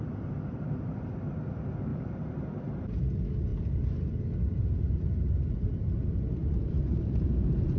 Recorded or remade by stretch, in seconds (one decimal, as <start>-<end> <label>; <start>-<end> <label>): 0.0-1.9 recorded; 1.9-3.0 remade; 3.0-6.4 recorded; 6.4-7.8 remade